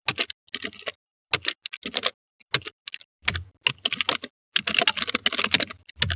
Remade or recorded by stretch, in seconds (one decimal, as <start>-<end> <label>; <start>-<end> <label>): 0.0-6.2 recorded